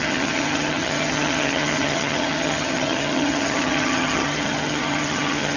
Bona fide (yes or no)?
no